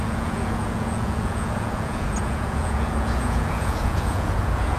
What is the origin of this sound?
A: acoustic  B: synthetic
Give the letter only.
B